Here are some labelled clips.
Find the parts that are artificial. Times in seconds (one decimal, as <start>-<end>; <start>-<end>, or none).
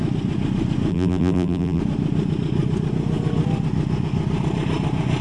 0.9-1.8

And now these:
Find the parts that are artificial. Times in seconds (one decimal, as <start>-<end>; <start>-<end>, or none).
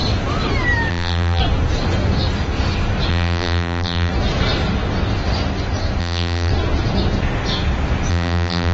0.9-1.4; 3.1-4.1; 6.0-6.5; 8.1-8.7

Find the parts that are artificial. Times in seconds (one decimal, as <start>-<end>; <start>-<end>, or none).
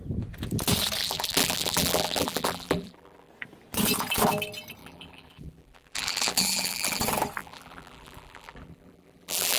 1.0-3.3; 4.8-7.0; 7.4-9.6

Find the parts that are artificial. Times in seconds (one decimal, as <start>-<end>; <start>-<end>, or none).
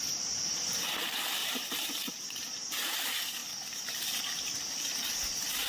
1.4-2.2